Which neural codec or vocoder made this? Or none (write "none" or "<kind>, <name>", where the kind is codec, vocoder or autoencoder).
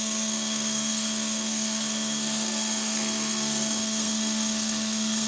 codec, SNAC